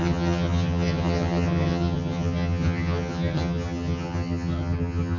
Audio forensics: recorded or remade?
remade